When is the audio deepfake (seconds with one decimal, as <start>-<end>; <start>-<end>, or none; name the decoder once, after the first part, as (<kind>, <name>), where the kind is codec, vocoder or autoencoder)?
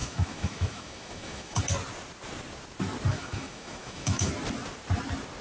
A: 0.0-1.6 (autoencoder, DAC-VAE); 3.1-4.3